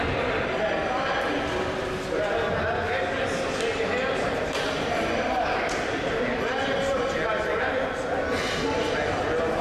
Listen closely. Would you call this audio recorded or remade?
recorded